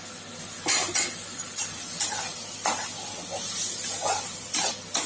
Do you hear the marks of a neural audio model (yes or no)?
no